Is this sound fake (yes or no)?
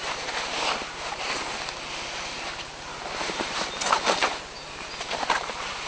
no